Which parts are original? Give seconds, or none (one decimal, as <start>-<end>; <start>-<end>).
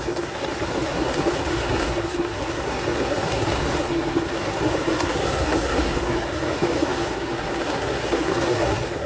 none